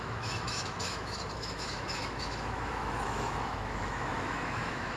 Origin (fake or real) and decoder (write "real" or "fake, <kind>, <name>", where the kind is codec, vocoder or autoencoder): fake, autoencoder, DAC-VAE